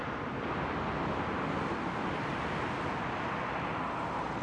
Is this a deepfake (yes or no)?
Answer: no